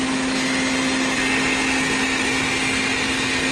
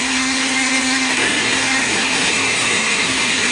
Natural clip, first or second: first